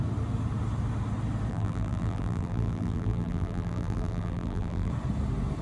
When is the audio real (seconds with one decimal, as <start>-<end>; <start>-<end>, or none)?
0.0-1.5; 4.9-5.6